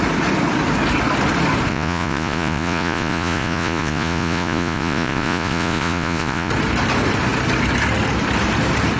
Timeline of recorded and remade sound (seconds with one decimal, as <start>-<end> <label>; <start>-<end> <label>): 0.0-1.7 recorded; 1.7-6.5 remade; 6.5-9.0 recorded